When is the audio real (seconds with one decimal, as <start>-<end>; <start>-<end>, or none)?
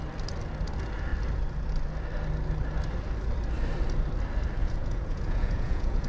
0.0-4.6